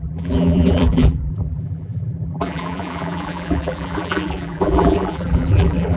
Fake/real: fake